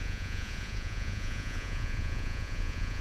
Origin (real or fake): fake